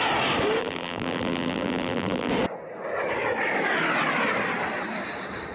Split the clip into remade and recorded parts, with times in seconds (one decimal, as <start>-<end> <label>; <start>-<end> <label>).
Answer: 0.0-0.6 recorded; 0.6-2.3 remade; 2.3-5.5 recorded